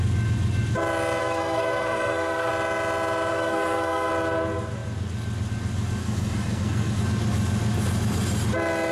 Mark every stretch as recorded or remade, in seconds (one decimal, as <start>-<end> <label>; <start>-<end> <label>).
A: 0.0-1.2 recorded; 1.2-2.5 remade; 2.5-3.3 recorded; 3.3-4.1 remade; 4.1-6.0 recorded; 6.0-7.0 remade; 7.0-8.9 recorded